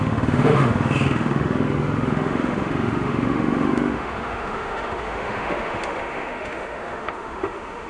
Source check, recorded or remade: remade